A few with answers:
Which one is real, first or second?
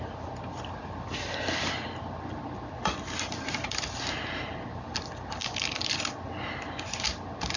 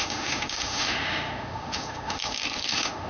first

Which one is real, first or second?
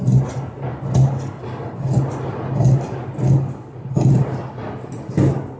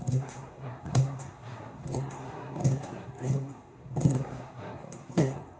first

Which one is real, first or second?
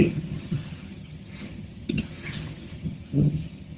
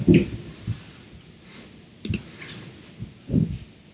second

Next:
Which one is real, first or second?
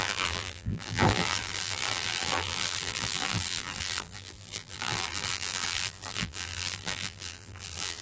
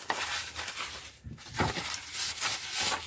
second